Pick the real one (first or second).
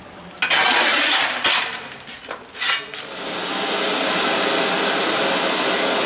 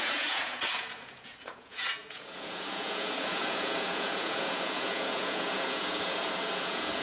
first